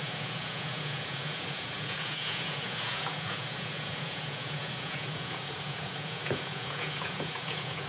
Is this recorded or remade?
remade